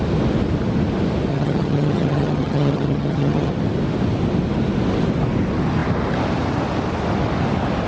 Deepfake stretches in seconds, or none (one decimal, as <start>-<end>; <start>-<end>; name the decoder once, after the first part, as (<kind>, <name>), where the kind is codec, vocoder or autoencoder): 1.3-3.5 (vocoder, HiFi-GAN)